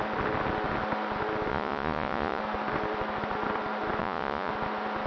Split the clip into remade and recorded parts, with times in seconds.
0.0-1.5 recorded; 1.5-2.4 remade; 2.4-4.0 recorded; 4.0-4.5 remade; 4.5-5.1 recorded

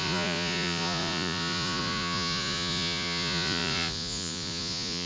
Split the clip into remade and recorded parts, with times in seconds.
0.0-5.1 remade

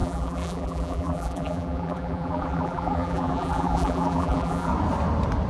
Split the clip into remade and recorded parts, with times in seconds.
0.0-4.7 remade; 4.7-5.5 recorded

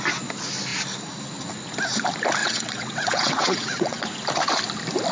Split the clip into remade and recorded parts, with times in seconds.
0.0-2.4 recorded; 2.4-4.0 remade; 4.0-5.1 recorded

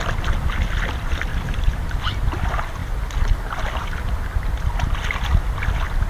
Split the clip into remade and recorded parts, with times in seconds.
0.0-1.3 recorded; 1.3-2.0 remade; 2.0-6.1 recorded